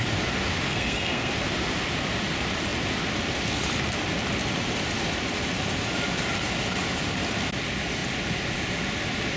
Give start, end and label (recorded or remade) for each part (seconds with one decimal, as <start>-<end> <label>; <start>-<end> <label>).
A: 0.0-0.7 recorded; 0.7-1.3 remade; 1.3-9.4 recorded